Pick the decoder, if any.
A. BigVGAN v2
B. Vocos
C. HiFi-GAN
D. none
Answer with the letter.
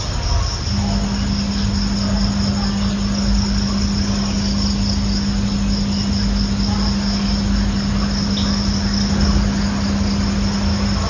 D